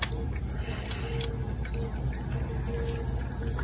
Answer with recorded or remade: recorded